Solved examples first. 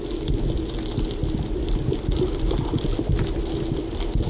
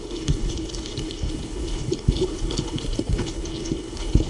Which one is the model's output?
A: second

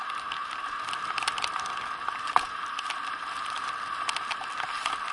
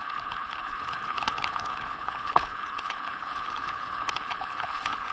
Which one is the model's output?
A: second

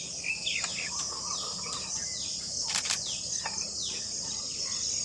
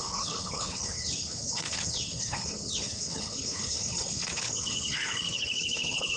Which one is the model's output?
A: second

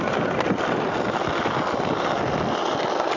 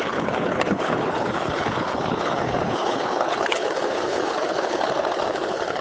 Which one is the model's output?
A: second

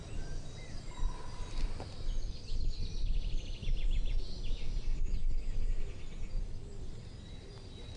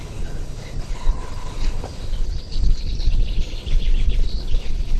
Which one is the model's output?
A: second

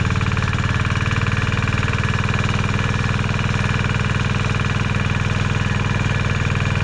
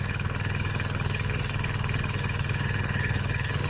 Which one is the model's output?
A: second